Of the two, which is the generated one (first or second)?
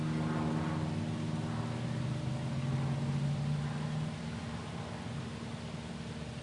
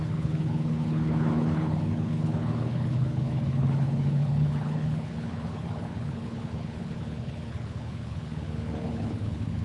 second